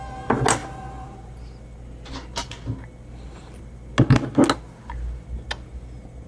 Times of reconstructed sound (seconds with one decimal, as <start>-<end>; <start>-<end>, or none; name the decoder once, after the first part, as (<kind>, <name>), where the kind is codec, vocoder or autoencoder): none